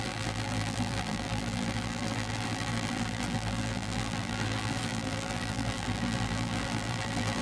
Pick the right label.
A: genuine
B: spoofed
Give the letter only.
B